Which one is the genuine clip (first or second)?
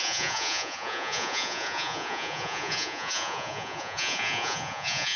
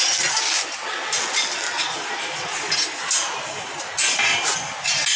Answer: second